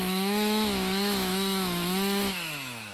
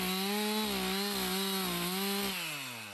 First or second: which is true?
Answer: second